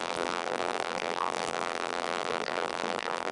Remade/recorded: remade